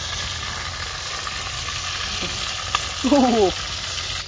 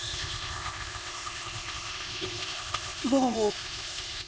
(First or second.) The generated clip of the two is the second